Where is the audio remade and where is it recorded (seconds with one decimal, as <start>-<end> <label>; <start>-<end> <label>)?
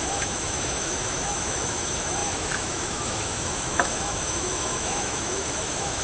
0.0-6.0 remade